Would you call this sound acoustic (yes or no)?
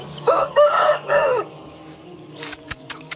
no